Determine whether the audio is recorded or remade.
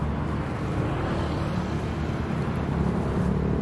recorded